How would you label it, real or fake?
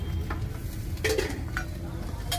real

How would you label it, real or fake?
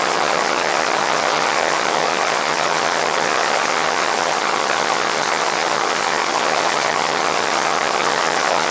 fake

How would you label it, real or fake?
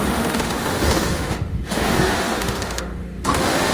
fake